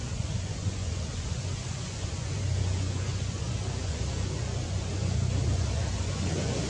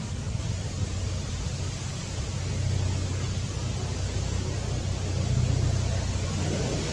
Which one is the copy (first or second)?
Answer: first